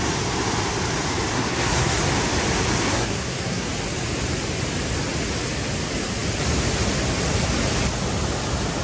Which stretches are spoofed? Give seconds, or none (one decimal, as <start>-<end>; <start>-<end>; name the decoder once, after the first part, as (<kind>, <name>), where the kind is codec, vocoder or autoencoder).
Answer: 1.3-2.0 (codec, SNAC); 2.9-3.7